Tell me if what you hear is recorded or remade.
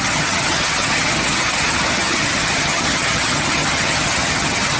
remade